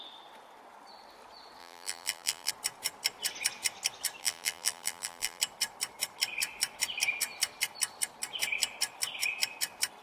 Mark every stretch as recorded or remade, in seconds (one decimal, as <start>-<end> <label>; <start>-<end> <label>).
0.0-1.6 recorded; 1.6-2.5 remade; 2.5-4.2 recorded; 4.2-5.4 remade; 5.4-10.0 recorded